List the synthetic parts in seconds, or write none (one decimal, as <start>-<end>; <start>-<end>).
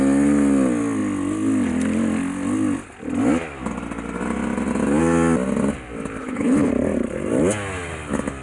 6.2-6.7